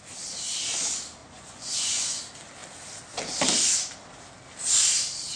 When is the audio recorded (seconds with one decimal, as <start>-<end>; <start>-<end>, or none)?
0.0-1.2; 2.2-5.4